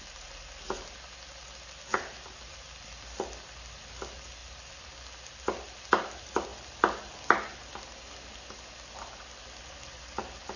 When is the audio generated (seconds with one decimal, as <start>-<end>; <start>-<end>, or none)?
none